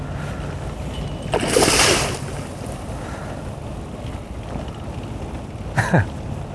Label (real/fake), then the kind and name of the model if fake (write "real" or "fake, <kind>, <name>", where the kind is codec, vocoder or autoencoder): real